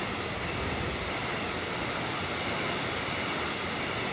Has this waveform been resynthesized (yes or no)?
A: no